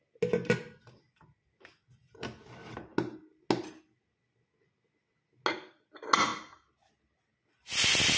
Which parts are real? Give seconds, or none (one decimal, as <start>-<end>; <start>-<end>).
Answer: 0.0-8.2